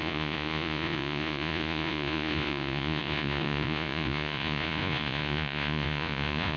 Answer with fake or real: fake